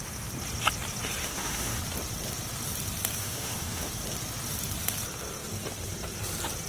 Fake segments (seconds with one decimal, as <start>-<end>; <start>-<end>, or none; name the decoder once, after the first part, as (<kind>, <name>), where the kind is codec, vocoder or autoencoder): 1.2-1.8 (autoencoder, DAC-VAE); 3.2-3.9